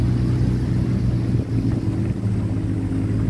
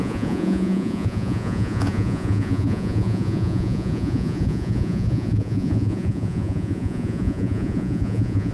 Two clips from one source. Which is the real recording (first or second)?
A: first